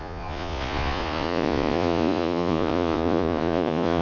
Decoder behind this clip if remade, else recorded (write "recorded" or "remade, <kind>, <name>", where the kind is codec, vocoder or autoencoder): remade, vocoder, Vocos